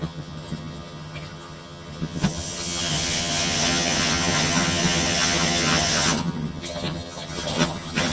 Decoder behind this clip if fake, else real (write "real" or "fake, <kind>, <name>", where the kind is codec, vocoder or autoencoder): fake, vocoder, HiFi-GAN